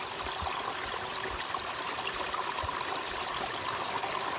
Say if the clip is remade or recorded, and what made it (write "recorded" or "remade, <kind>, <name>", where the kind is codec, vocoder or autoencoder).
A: recorded